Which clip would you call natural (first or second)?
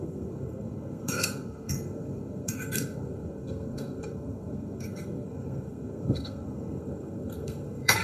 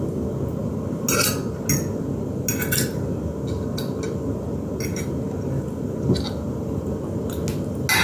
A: second